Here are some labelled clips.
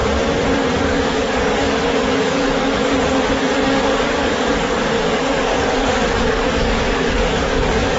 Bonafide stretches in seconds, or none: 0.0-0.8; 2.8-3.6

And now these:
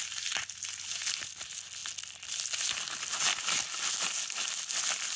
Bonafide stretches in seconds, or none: 0.0-5.2

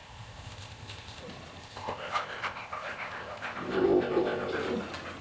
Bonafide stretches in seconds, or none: 1.2-1.6; 4.5-5.2

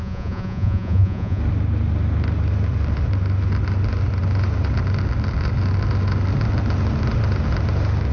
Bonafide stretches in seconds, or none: 1.4-8.1

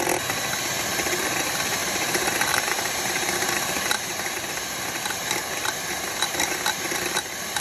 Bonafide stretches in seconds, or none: 0.0-1.8; 4.8-5.4; 6.6-7.6

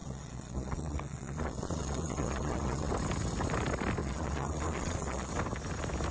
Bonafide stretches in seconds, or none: 2.9-4.0; 5.3-6.1

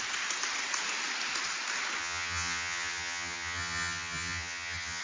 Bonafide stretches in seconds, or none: 0.0-2.0